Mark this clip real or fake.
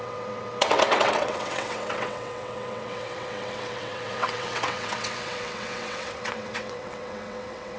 fake